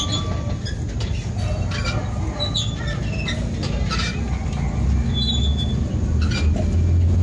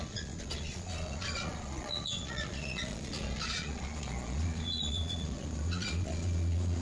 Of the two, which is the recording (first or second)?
first